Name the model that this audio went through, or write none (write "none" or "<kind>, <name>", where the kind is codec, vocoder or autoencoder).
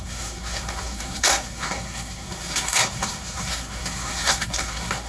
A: codec, SNAC